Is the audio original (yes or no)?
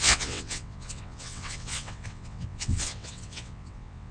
no